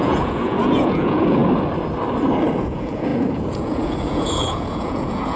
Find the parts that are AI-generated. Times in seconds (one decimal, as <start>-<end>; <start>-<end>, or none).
0.0-1.4; 2.6-5.4

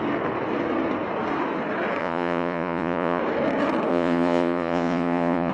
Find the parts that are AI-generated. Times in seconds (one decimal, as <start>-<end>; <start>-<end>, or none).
2.0-3.2; 3.9-5.5